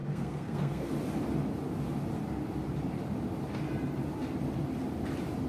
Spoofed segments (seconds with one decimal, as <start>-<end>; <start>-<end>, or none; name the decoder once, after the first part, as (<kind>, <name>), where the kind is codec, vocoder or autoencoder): 0.0-0.9 (codec, SNAC)